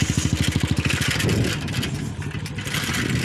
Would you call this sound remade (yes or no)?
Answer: no